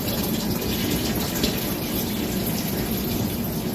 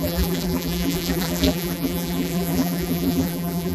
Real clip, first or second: first